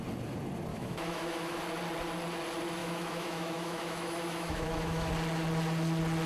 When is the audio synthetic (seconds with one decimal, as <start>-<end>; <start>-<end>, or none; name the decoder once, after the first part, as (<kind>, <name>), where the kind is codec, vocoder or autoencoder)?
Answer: 0.7-1.6 (autoencoder, DAC-VAE); 2.8-5.1